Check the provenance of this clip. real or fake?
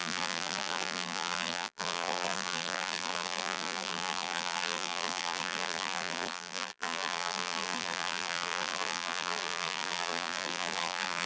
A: fake